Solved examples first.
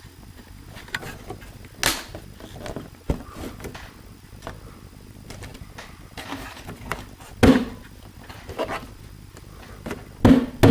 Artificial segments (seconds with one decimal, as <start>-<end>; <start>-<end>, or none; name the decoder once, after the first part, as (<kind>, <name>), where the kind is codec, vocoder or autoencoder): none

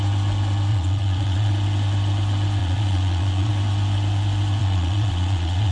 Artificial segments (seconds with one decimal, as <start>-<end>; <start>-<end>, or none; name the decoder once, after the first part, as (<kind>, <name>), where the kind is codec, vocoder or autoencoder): 0.7-1.5 (vocoder, Vocos); 2.6-3.5; 4.6-5.7

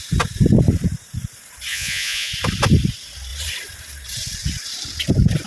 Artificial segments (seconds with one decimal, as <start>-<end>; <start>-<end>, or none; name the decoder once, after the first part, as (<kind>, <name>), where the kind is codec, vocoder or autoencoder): 1.7-2.3 (vocoder, Vocos)

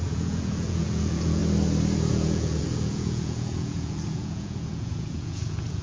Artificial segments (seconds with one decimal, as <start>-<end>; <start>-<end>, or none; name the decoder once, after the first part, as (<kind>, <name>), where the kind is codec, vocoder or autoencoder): 0.0-1.4 (vocoder, Vocos); 2.1-5.8

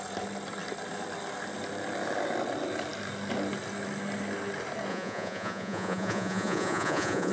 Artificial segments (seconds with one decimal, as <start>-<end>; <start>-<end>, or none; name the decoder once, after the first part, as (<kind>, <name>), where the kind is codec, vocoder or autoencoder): 4.9-7.3 (vocoder, Vocos)

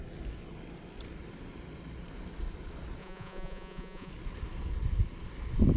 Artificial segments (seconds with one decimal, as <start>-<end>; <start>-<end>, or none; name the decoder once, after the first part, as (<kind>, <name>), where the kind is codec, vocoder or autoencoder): 3.0-4.1 (vocoder, Vocos)